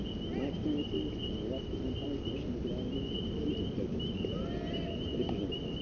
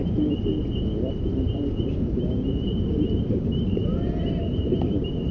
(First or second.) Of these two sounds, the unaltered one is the first